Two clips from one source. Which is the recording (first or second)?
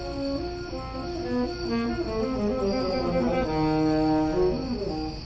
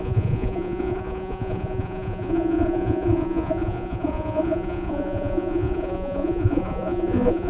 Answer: first